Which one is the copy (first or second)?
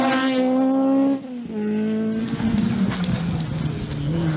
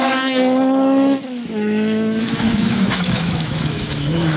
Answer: second